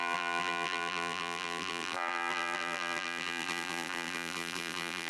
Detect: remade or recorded remade